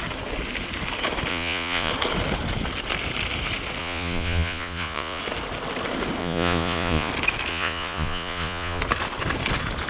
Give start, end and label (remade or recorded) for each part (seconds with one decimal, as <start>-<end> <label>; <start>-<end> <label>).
0.0-1.3 recorded; 1.3-1.9 remade; 1.9-3.8 recorded; 3.8-5.2 remade; 5.2-6.2 recorded; 6.2-7.1 remade; 7.1-7.5 recorded; 7.5-8.8 remade; 8.8-9.9 recorded

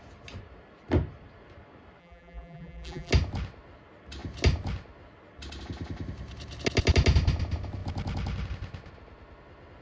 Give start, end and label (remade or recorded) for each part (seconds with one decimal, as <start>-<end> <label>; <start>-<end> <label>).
0.0-2.0 recorded; 2.0-3.1 remade; 3.1-9.8 recorded

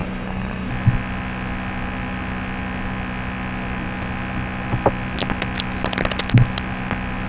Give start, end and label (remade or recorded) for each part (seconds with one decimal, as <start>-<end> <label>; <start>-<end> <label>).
0.0-0.7 remade; 0.7-7.3 recorded